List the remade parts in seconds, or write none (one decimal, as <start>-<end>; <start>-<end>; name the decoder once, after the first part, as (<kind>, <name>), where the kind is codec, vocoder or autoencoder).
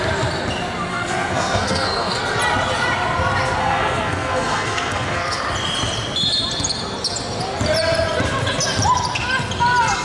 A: 0.9-2.2 (codec, SNAC); 3.6-5.4